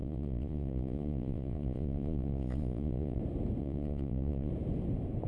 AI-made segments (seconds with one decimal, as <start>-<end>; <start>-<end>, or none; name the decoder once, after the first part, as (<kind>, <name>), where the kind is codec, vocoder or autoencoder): 0.0-3.2 (vocoder, Vocos); 3.6-4.5